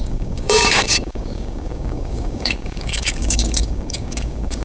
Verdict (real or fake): fake